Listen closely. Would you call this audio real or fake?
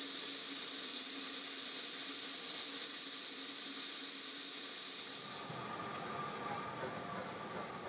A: real